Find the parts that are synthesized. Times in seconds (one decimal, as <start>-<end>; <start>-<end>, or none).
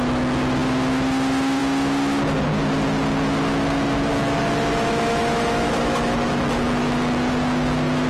4.1-7.3